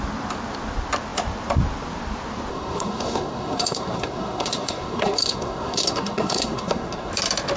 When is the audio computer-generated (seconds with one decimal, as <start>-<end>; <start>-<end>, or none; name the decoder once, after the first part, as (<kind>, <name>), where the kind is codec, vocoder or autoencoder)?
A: 2.5-7.1 (codec, SNAC)